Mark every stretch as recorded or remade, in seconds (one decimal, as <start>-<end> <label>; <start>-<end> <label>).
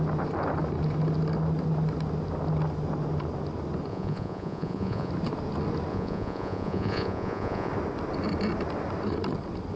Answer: 0.0-3.9 recorded; 3.9-5.1 remade; 5.1-5.9 recorded; 5.9-7.7 remade; 7.7-9.8 recorded